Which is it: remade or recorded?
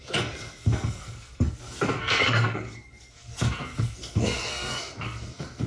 remade